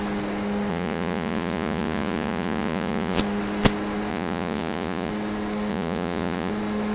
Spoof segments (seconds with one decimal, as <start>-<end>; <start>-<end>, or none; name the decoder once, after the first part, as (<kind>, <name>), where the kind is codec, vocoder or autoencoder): 0.7-3.2 (vocoder, Vocos); 4.1-5.1; 5.7-6.5